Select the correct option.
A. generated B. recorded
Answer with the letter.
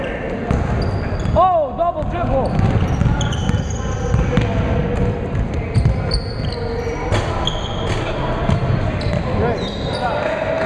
B